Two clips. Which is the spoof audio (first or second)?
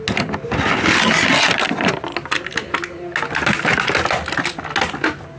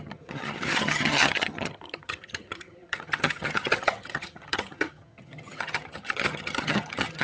second